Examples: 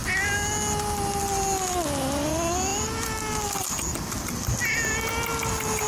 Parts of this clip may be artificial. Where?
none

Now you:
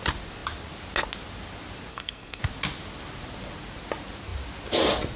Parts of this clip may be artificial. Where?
1.9-2.4 (codec, SNAC)

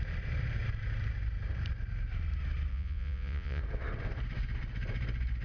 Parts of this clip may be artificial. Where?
2.7-3.6 (vocoder, Vocos)

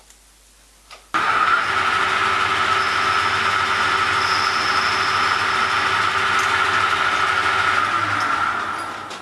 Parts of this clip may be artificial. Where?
1.2-1.7 (codec, SNAC)

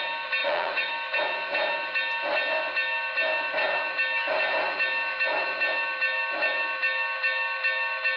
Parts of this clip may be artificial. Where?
0.4-0.9 (vocoder, Vocos)